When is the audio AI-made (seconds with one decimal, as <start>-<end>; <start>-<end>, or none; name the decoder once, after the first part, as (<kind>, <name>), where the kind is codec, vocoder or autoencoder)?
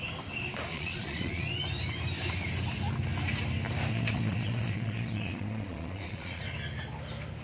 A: 0.7-1.4 (vocoder, Vocos); 3.9-6.4